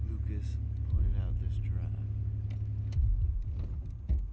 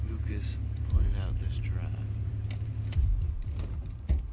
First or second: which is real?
first